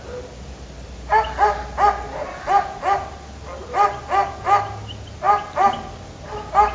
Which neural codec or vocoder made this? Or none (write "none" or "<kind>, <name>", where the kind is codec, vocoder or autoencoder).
none